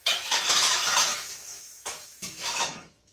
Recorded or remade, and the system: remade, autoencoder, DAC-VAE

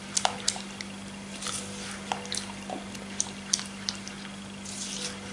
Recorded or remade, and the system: recorded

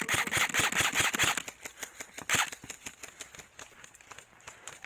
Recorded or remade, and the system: recorded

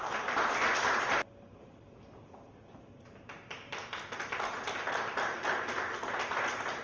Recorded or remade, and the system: recorded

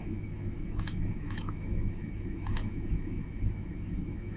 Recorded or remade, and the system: remade, autoencoder, DAC-VAE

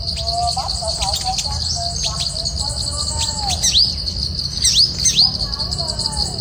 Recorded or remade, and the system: recorded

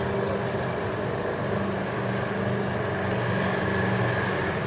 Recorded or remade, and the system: recorded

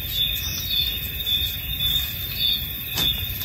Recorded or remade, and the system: recorded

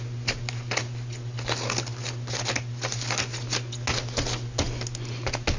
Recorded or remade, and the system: recorded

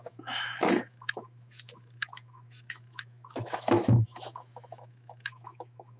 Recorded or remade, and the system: remade, autoencoder, DAC-VAE